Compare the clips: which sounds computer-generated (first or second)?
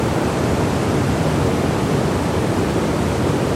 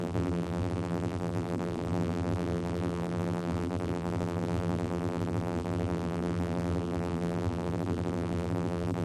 second